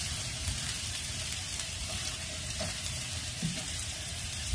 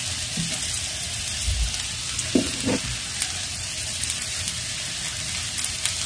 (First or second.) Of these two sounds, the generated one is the first